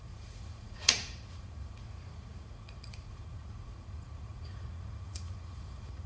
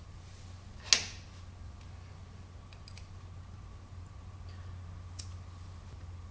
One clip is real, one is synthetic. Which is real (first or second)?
second